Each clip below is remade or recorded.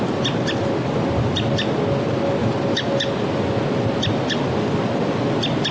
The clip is recorded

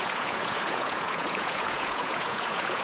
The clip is remade